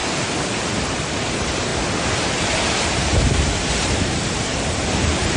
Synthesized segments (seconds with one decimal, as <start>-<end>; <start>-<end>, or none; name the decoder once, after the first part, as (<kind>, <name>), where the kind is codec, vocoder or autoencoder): 0.7-1.7 (vocoder, BigVGAN v2); 4.5-5.4

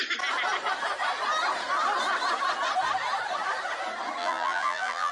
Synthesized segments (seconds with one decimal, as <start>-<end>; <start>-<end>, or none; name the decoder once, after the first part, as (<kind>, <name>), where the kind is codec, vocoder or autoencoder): 4.2-5.1 (vocoder, BigVGAN v2)

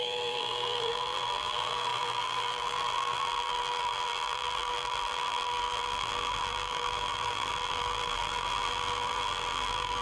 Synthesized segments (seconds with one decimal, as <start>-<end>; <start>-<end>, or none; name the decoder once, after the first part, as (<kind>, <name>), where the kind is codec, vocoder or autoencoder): 0.0-10.0 (vocoder, BigVGAN v2)

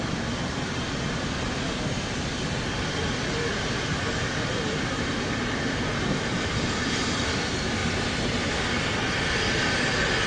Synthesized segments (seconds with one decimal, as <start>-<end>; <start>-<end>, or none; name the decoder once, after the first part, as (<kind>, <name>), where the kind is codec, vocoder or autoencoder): 3.5-7.2 (vocoder, BigVGAN v2); 7.8-8.5

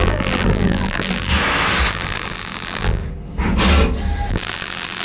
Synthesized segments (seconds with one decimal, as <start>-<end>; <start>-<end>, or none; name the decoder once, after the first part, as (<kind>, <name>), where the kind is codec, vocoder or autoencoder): 0.0-1.3 (vocoder, BigVGAN v2); 1.9-3.0; 4.3-5.0

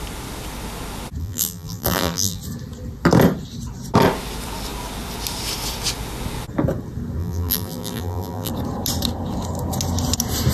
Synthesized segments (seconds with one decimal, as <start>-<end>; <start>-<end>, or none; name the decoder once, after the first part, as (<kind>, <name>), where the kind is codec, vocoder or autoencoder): 1.2-2.4 (vocoder, BigVGAN v2); 7.2-8.5

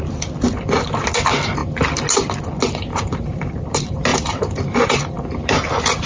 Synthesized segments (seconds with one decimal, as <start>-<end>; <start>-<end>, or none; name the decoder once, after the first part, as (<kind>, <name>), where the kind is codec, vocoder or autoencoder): 2.9-3.5 (vocoder, BigVGAN v2); 4.1-5.0

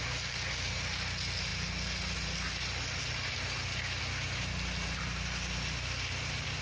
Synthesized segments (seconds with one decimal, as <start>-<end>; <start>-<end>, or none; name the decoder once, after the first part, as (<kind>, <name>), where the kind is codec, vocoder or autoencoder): none